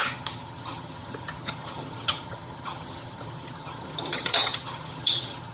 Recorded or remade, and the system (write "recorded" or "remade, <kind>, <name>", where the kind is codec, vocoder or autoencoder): remade, vocoder, HiFi-GAN